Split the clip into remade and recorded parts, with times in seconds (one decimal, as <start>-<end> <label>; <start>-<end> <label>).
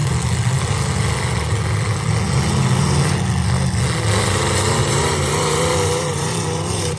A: 0.0-4.8 recorded; 4.8-7.0 remade